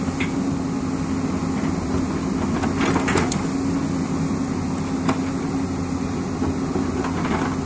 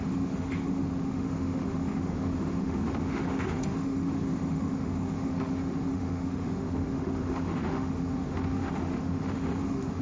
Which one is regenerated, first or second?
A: second